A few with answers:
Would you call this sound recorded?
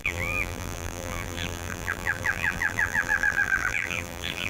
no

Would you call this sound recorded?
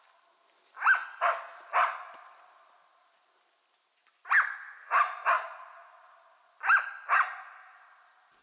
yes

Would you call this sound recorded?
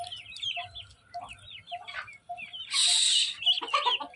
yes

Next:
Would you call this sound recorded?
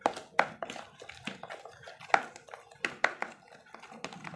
yes